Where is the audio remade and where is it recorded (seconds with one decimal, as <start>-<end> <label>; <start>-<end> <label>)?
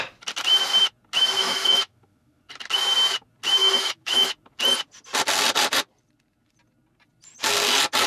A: 0.0-1.4 recorded; 1.4-2.4 remade; 2.4-3.6 recorded; 3.6-4.3 remade; 4.3-8.1 recorded